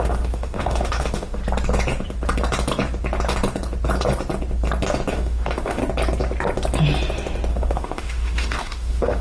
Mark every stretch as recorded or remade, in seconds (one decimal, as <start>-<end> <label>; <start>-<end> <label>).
0.0-1.4 remade; 1.4-5.1 recorded; 5.1-5.8 remade; 5.8-7.5 recorded; 7.5-9.2 remade